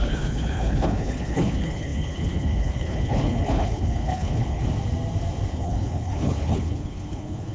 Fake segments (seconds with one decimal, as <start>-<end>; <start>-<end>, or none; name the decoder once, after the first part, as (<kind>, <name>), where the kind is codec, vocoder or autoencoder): 0.0-4.6 (codec, HILCodec); 5.5-7.5